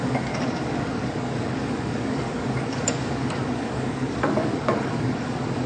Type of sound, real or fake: fake